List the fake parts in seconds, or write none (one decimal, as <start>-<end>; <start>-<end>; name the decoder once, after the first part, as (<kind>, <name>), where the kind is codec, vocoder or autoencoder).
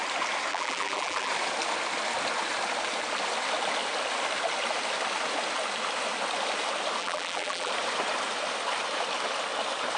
0.5-1.3 (vocoder, BigVGAN v2); 7.0-7.7